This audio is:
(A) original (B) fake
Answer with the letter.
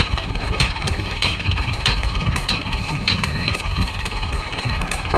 B